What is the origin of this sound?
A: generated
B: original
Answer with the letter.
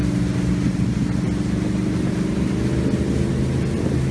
B